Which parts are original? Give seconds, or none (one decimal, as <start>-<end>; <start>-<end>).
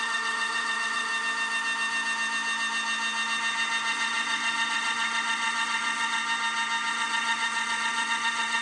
1.1-3.9; 6.2-6.9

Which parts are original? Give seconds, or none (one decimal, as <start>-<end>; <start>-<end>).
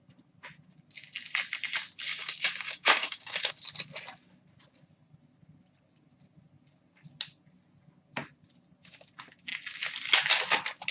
0.0-2.1; 3.5-10.9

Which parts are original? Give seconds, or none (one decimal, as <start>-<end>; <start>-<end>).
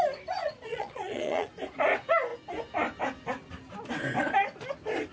0.0-0.4; 1.5-5.1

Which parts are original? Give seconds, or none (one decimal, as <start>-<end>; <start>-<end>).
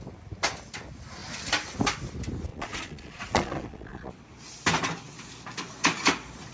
0.0-2.5; 4.1-6.5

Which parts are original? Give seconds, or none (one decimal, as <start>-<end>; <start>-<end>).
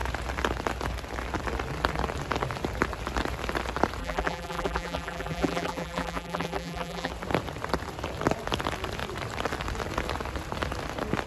0.0-4.0; 7.1-11.3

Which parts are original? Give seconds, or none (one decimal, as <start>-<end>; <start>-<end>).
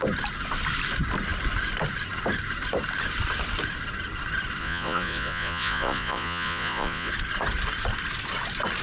0.0-4.6; 7.1-8.8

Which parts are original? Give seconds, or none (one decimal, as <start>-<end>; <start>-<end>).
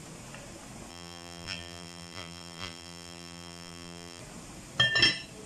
0.0-0.9; 4.2-5.5